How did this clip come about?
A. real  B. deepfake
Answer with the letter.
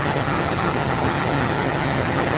B